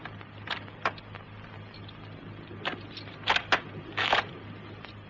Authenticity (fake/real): real